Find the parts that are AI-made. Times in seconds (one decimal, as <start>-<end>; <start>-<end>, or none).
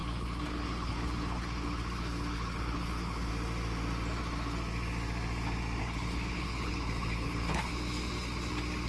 0.0-3.3; 5.8-7.7